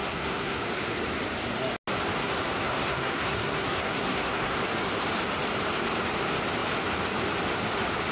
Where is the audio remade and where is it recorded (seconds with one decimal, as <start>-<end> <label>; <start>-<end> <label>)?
0.0-0.6 remade; 0.6-2.2 recorded; 2.2-4.6 remade; 4.6-8.1 recorded